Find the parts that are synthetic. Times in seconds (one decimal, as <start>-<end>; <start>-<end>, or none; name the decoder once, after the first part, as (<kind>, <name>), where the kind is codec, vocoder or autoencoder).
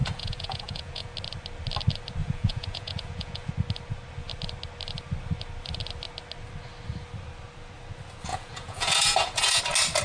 0.0-1.1 (vocoder, Vocos); 2.2-3.5; 8.3-9.6